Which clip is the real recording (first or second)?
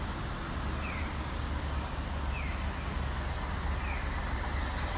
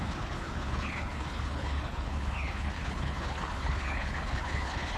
first